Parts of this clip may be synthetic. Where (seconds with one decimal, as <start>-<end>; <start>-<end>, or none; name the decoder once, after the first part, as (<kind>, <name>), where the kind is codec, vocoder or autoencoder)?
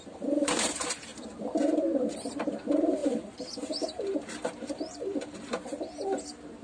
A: 0.0-6.6 (vocoder, BigVGAN v2)